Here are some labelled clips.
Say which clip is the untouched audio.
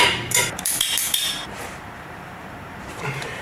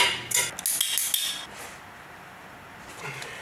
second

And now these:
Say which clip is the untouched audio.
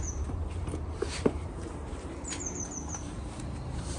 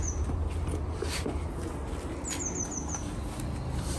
second